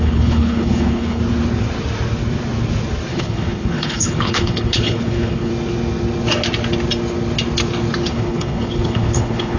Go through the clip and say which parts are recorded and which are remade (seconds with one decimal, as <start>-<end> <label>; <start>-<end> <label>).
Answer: 0.0-1.2 remade; 1.2-3.1 recorded; 3.1-5.5 remade; 5.5-8.1 recorded; 8.1-9.6 remade

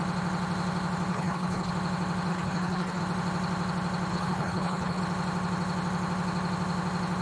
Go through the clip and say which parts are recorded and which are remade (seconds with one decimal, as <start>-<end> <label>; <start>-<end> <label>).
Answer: 0.0-1.1 recorded; 1.1-1.7 remade; 1.7-2.3 recorded; 2.3-3.0 remade; 3.0-4.1 recorded; 4.1-5.0 remade; 5.0-7.2 recorded

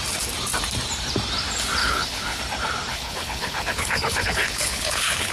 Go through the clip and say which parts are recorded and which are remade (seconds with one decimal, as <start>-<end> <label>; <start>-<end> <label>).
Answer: 0.0-1.8 recorded; 1.8-2.4 remade; 2.4-2.9 recorded; 2.9-5.3 remade

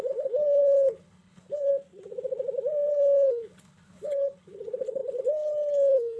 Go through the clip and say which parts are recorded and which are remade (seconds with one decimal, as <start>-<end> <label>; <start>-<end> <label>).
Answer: 0.0-1.7 remade; 1.7-2.9 recorded; 2.9-6.2 remade

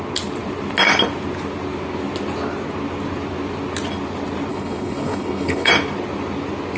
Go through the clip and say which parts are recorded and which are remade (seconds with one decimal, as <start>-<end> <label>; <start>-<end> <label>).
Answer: 0.0-4.5 recorded; 4.5-5.7 remade; 5.7-6.8 recorded